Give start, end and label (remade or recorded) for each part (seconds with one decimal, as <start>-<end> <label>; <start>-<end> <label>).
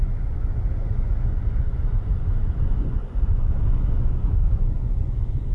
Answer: 0.0-5.5 remade